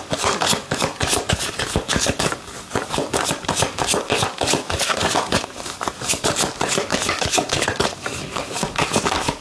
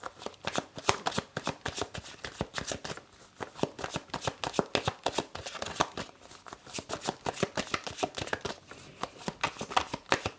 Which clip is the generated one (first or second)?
first